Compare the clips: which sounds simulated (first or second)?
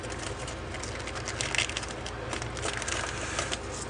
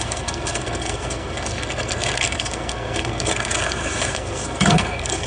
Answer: second